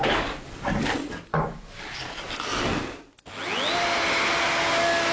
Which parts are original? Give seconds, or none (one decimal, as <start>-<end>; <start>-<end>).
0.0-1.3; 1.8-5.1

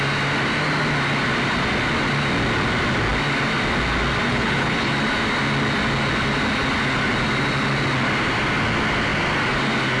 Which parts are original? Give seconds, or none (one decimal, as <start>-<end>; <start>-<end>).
0.0-4.3; 4.9-10.0

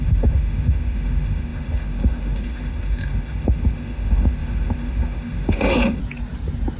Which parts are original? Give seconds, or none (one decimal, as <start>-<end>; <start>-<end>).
6.0-6.8

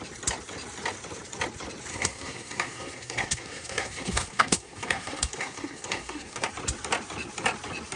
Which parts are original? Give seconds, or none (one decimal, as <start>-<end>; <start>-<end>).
0.0-1.9; 6.5-8.0

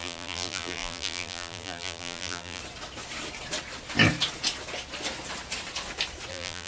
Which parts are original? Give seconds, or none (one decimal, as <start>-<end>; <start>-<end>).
2.6-6.3

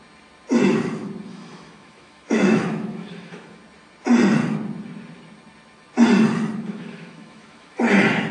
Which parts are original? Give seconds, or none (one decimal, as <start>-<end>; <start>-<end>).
0.0-1.3; 3.6-6.7; 7.8-8.3

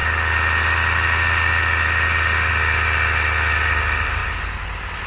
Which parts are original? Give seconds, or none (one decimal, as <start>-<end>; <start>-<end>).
0.0-5.1

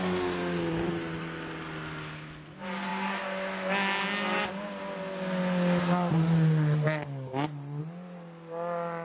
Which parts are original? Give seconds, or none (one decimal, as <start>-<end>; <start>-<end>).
0.0-9.0